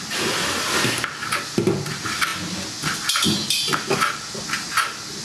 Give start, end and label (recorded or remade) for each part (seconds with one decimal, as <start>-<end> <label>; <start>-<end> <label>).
0.0-5.2 recorded